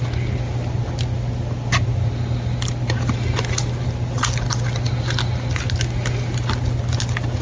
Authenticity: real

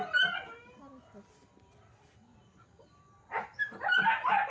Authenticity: real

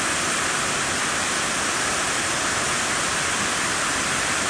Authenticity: real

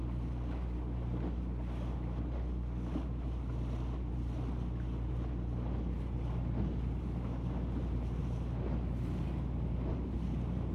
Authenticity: real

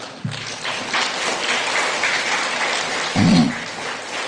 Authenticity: real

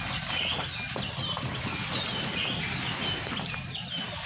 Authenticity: real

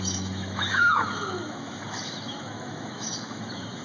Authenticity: fake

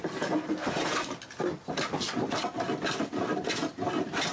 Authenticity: real